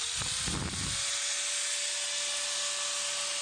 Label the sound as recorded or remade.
recorded